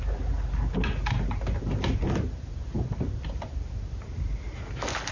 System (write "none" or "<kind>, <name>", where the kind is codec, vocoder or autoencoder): none